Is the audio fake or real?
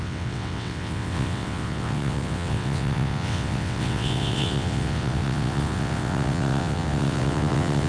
fake